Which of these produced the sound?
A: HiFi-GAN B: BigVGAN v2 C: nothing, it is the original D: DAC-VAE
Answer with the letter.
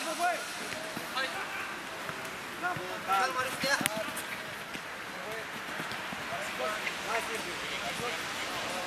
C